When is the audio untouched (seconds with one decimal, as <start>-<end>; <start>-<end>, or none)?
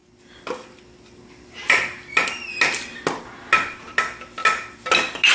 0.0-5.3